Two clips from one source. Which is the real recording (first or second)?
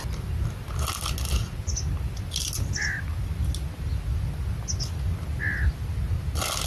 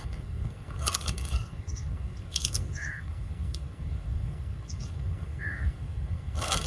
first